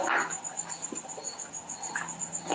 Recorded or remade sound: recorded